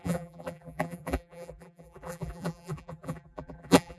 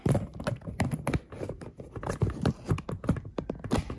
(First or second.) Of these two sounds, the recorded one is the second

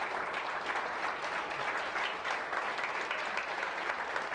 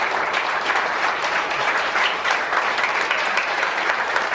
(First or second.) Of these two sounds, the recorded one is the first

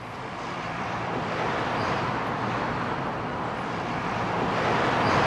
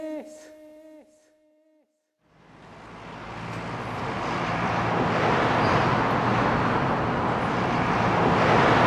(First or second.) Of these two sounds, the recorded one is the second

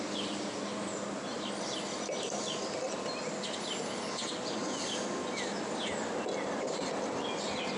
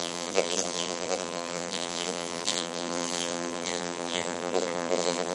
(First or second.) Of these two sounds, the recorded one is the first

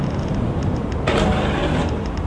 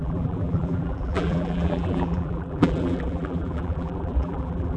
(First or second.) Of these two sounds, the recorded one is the first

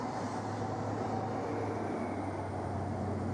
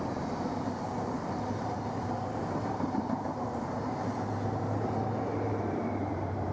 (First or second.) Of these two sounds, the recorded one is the first